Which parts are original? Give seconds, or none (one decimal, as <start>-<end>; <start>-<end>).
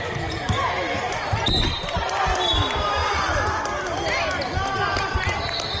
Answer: 0.0-1.3; 2.2-3.0; 3.6-5.8